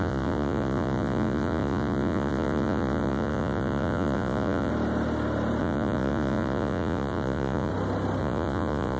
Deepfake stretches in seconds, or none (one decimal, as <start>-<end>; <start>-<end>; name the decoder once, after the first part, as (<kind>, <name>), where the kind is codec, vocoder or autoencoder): 0.0-4.7 (vocoder, Vocos); 5.6-7.7; 8.2-9.0